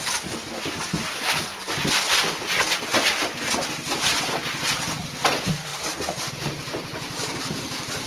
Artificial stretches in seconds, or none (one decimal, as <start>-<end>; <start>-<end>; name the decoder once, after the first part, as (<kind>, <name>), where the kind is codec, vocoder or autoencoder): none